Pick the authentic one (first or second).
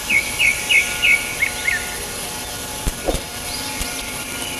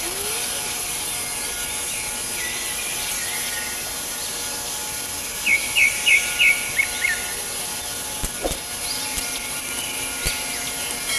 second